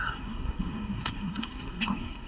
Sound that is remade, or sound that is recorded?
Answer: remade